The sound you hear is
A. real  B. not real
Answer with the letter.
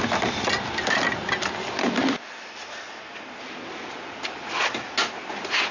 A